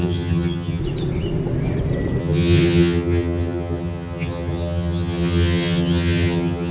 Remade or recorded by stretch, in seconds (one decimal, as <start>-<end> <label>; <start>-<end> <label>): 0.0-0.8 remade; 0.8-2.2 recorded; 2.2-6.7 remade